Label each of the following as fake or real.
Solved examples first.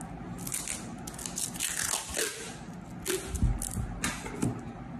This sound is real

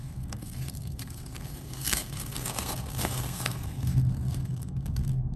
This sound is fake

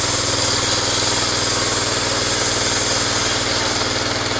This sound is real